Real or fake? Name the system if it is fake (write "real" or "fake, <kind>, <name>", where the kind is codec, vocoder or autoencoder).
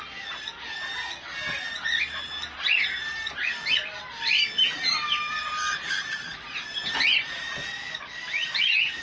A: real